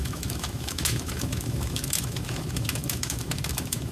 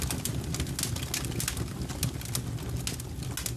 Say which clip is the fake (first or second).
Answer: first